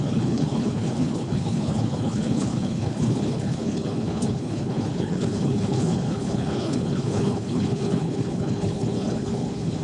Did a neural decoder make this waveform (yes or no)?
yes